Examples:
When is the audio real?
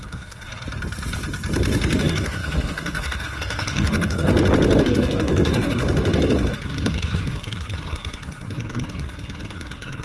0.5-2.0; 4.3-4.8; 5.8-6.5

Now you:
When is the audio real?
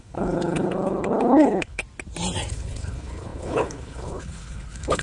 1.8-2.5